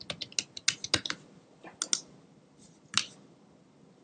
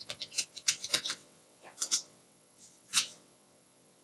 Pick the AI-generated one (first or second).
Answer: second